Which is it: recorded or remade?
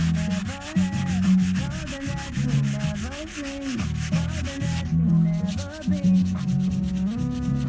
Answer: recorded